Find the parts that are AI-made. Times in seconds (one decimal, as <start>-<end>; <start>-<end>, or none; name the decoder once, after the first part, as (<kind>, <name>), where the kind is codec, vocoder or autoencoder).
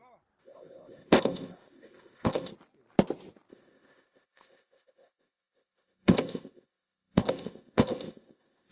0.4-2.5 (codec, ZipCodec); 3.5-8.7